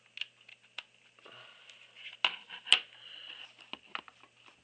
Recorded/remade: recorded